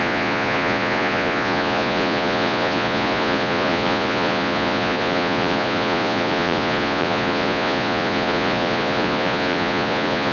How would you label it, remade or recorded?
remade